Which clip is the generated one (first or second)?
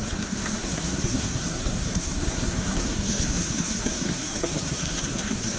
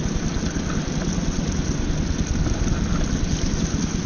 first